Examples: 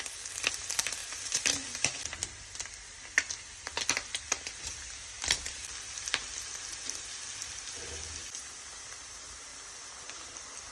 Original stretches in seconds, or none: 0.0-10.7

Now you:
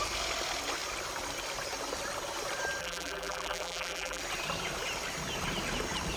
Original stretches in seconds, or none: 0.0-2.8; 4.2-6.2